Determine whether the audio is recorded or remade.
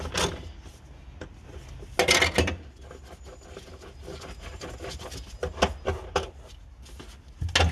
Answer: recorded